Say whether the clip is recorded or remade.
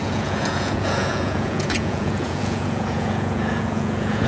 remade